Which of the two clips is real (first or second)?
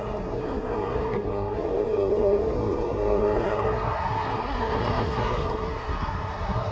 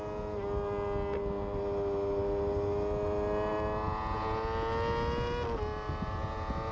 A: second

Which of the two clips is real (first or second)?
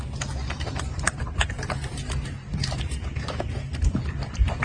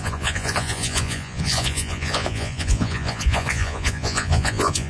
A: first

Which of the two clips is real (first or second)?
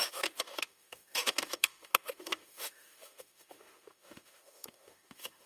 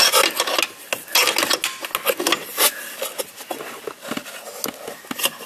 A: second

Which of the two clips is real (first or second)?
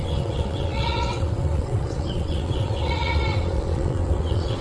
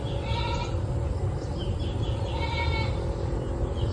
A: second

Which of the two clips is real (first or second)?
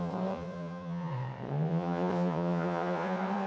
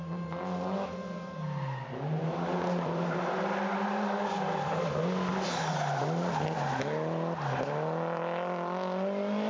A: second